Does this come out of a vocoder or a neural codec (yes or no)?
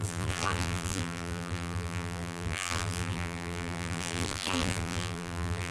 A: yes